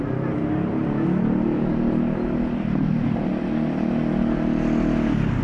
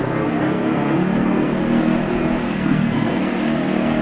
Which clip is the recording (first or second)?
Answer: first